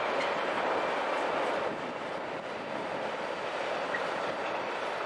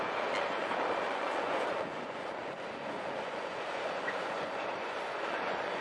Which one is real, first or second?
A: first